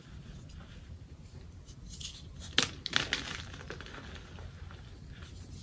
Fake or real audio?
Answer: real